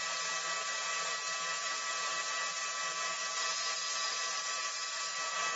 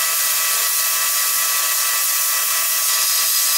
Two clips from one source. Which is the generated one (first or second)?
second